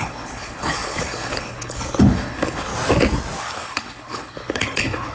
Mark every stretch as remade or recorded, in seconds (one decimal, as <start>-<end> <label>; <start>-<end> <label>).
0.0-2.7 remade; 2.7-3.4 recorded; 3.4-5.1 remade